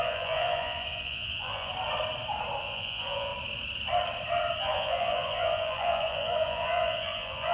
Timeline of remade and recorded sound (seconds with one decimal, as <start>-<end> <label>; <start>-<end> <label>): 0.0-1.7 remade; 1.7-2.6 recorded; 2.6-3.3 remade; 3.3-4.6 recorded; 4.6-7.5 remade